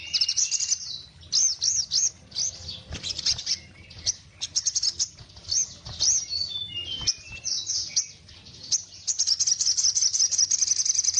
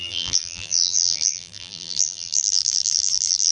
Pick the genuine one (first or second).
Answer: first